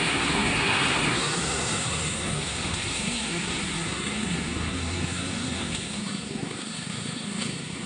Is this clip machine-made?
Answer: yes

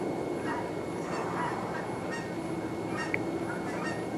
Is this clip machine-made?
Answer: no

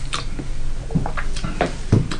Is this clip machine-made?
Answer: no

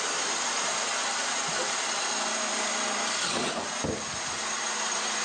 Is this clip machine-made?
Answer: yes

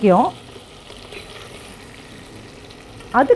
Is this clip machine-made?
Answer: no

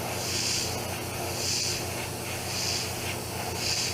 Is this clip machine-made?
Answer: no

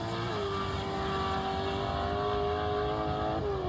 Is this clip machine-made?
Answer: no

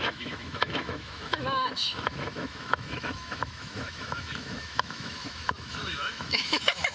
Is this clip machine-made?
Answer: yes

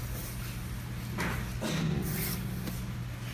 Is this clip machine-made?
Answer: no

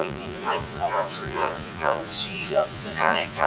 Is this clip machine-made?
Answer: yes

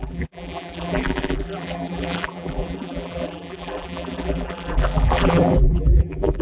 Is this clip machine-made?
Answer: yes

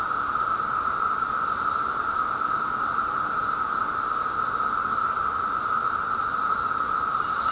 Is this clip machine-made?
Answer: no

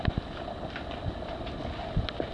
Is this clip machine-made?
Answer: no